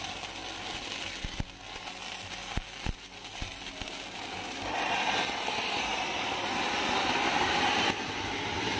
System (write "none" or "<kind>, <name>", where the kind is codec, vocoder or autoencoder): none